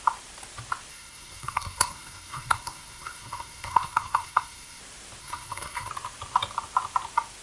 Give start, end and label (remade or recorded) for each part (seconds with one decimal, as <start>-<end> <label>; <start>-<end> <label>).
0.0-0.9 recorded; 0.9-4.8 remade; 4.8-5.2 recorded; 5.2-5.9 remade; 5.9-7.4 recorded